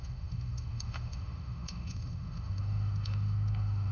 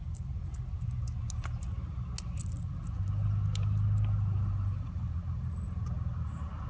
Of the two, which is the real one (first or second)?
second